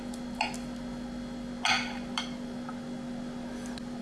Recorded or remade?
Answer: recorded